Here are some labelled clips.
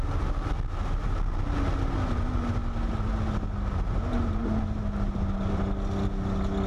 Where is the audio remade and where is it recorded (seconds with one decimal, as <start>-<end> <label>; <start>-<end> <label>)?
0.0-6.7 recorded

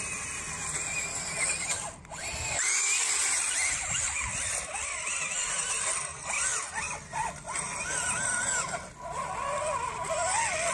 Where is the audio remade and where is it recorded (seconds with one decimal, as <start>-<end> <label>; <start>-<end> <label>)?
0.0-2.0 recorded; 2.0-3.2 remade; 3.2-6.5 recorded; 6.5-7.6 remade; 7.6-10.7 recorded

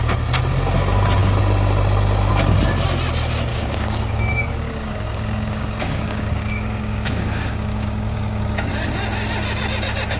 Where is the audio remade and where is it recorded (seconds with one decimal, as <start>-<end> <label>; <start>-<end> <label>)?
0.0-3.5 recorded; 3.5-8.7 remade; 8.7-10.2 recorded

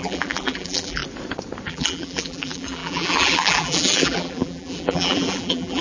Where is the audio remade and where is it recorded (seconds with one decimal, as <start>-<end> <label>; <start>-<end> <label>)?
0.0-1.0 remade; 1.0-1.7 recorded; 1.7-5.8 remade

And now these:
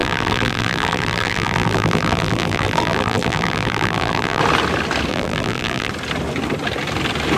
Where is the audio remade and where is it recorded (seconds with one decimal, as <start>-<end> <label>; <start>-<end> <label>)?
0.0-4.4 remade; 4.4-5.1 recorded; 5.1-5.9 remade; 5.9-7.4 recorded

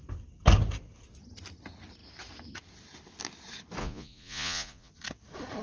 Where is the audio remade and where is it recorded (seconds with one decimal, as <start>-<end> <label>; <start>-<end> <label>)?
0.0-3.8 recorded; 3.8-4.9 remade; 4.9-5.6 recorded